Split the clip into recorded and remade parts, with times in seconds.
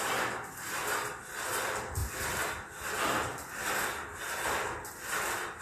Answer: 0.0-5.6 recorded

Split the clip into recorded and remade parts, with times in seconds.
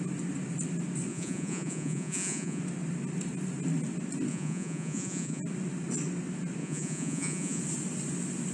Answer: 0.0-1.1 recorded; 1.1-2.6 remade; 2.6-4.3 recorded; 4.3-5.4 remade; 5.4-6.6 recorded; 6.6-7.6 remade; 7.6-8.5 recorded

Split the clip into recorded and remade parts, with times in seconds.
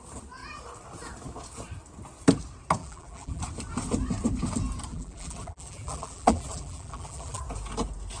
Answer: 0.0-2.8 recorded; 2.8-3.4 remade; 3.4-4.9 recorded; 4.9-7.4 remade; 7.4-8.2 recorded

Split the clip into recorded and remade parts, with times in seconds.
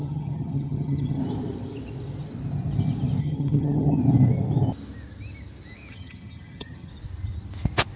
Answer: 0.0-1.2 remade; 1.2-3.2 recorded; 3.2-4.0 remade; 4.0-5.9 recorded; 5.9-6.9 remade; 6.9-8.0 recorded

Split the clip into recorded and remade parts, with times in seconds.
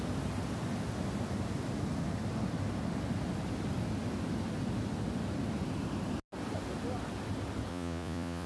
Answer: 0.0-7.7 recorded; 7.7-8.5 remade